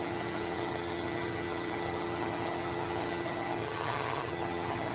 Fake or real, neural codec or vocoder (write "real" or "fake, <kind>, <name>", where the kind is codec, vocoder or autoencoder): fake, vocoder, HiFi-GAN